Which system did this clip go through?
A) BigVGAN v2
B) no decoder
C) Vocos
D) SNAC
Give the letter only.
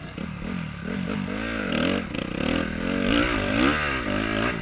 B